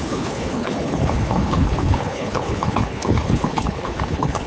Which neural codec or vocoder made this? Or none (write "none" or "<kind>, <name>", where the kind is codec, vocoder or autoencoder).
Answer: codec, HILCodec